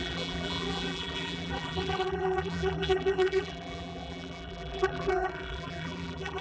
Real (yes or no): no